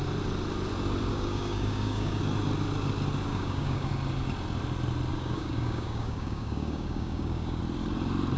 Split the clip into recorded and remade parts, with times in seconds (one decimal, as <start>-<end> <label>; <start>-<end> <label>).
0.0-1.1 recorded; 1.1-2.2 remade; 2.2-3.3 recorded; 3.3-3.9 remade; 3.9-5.1 recorded; 5.1-7.6 remade; 7.6-8.4 recorded